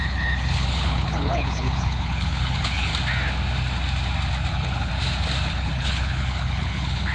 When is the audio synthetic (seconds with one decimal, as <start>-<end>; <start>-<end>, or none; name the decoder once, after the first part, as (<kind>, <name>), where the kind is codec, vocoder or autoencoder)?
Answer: 0.0-2.9 (codec, HILCodec); 4.5-4.9; 5.5-7.1

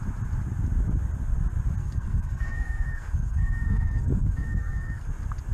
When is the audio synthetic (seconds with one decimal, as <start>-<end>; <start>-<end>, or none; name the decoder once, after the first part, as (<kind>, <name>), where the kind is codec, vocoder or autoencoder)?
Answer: 1.8-5.1 (codec, SNAC)

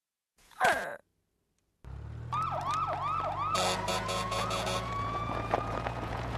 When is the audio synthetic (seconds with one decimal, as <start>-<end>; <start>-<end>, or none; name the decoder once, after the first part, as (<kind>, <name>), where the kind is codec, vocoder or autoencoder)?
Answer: 0.0-1.1 (vocoder, Vocos); 3.9-6.4